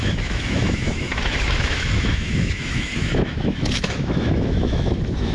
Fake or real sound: fake